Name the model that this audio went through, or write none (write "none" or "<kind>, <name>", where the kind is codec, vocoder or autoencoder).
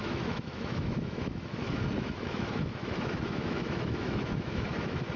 autoencoder, DAC-VAE